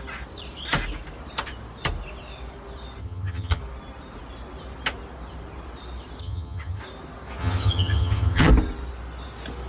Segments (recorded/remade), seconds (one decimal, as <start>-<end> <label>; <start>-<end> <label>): 0.0-3.0 recorded; 3.0-3.6 remade; 3.6-6.2 recorded; 6.2-6.8 remade; 6.8-7.4 recorded; 7.4-8.5 remade; 8.5-9.7 recorded